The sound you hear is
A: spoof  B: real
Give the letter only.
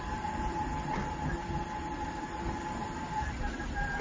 B